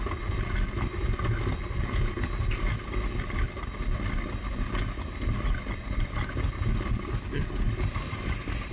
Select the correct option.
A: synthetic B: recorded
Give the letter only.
B